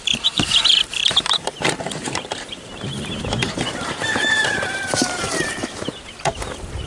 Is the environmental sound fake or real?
fake